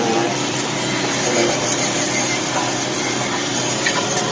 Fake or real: fake